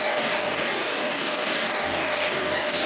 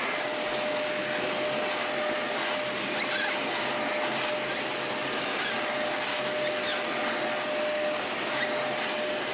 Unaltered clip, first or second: second